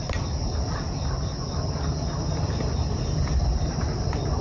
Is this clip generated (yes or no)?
no